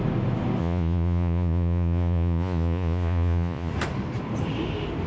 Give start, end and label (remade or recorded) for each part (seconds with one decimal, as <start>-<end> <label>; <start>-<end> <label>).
0.0-0.6 recorded; 0.6-3.7 remade; 3.7-5.1 recorded